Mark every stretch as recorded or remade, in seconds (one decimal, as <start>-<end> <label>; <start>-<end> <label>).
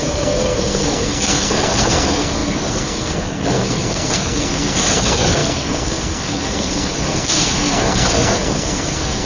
0.0-9.3 remade